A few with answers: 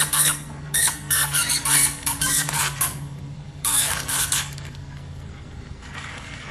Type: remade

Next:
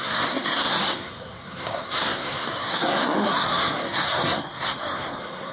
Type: remade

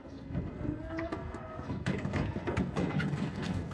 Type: remade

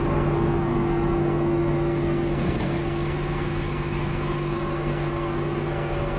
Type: remade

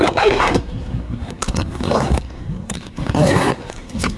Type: remade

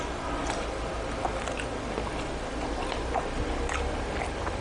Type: recorded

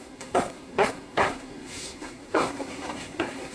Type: remade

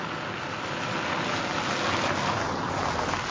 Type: recorded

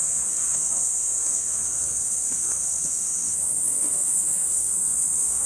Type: remade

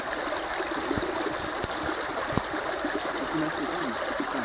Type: recorded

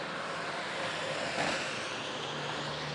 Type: recorded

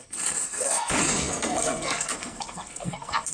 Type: remade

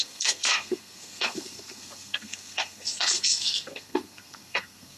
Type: remade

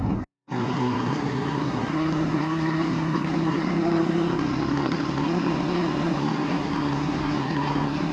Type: remade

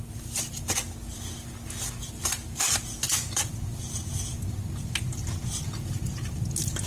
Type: recorded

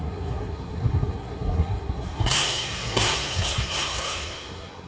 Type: remade